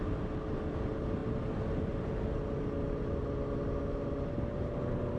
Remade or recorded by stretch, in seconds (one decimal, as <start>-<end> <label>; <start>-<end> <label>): 0.0-5.2 recorded